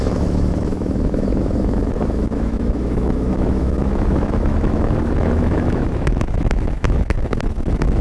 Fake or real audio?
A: fake